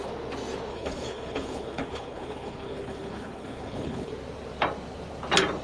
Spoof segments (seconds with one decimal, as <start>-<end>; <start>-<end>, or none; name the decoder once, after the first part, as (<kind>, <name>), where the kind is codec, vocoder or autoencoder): 0.7-4.1 (codec, HILCodec)